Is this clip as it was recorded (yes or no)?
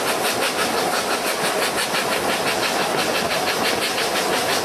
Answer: yes